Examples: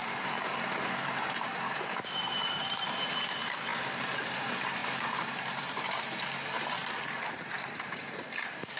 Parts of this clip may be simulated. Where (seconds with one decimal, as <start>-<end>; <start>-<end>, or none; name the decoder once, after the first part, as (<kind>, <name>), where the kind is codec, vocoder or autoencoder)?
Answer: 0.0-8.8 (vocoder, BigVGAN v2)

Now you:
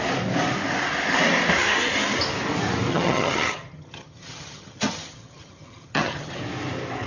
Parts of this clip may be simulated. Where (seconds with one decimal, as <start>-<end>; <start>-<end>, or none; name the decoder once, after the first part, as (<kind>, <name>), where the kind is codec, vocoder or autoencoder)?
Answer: 2.9-6.4 (vocoder, HiFi-GAN)

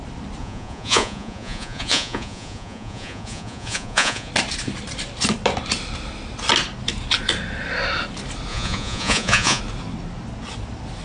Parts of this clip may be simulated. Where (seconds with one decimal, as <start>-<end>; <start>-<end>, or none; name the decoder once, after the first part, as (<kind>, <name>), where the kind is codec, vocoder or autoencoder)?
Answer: 0.4-4.3 (vocoder, Vocos); 8.5-9.6